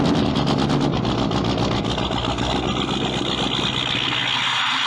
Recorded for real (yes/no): yes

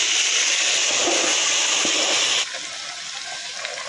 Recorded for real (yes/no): yes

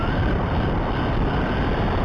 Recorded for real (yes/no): yes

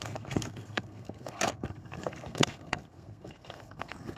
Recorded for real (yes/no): no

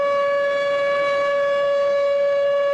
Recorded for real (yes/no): yes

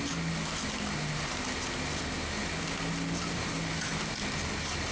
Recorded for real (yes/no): yes